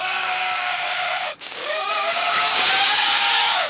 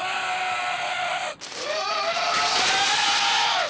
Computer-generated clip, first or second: first